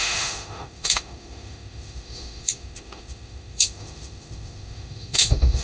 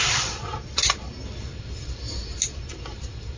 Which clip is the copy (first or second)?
first